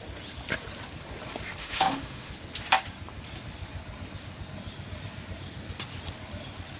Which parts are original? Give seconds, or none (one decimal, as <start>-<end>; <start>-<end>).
0.0-1.6; 2.3-6.8